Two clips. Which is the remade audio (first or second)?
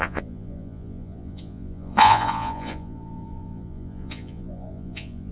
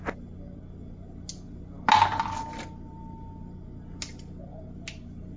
first